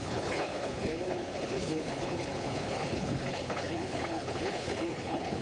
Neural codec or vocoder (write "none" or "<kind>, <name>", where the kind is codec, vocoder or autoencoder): codec, HILCodec